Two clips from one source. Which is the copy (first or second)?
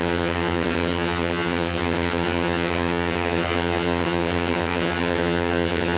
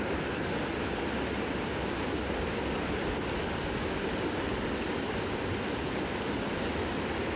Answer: first